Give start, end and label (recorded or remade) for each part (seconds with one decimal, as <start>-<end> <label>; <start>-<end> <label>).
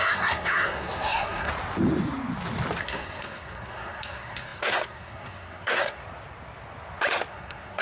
0.0-1.5 remade; 1.5-2.8 recorded; 2.8-6.0 remade; 6.0-7.3 recorded; 7.3-7.8 remade